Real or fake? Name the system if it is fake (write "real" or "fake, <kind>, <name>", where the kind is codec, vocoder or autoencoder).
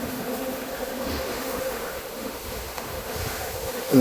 fake, autoencoder, DAC-VAE